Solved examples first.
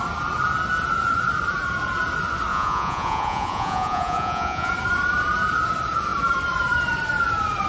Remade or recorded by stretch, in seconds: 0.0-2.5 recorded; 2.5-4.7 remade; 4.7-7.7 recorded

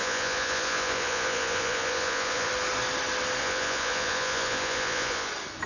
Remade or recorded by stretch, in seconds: 0.0-2.5 remade; 2.5-3.4 recorded; 3.4-5.3 remade; 5.3-5.7 recorded

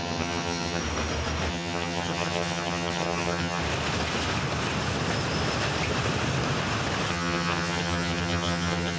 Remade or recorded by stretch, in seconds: 0.0-0.8 remade; 0.8-1.5 recorded; 1.5-3.6 remade; 3.6-7.1 recorded; 7.1-9.0 remade

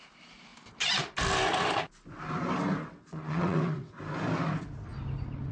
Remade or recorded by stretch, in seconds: 0.0-2.8 recorded; 2.8-4.0 remade; 4.0-5.5 recorded

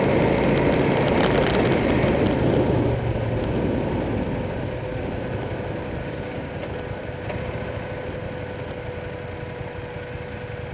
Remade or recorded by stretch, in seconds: 0.0-6.0 recorded; 6.0-6.6 remade; 6.6-10.7 recorded

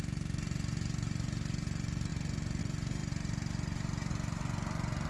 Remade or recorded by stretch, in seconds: 0.0-5.1 recorded